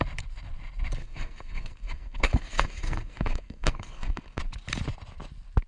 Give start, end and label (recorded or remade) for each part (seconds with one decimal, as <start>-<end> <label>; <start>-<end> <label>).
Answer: 0.0-1.0 recorded; 1.0-4.4 remade; 4.4-5.7 recorded